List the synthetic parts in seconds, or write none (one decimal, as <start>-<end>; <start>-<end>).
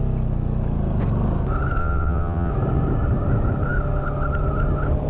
1.8-2.5